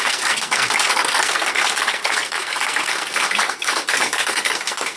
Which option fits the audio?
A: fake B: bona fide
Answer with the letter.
A